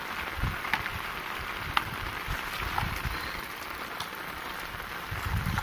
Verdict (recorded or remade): recorded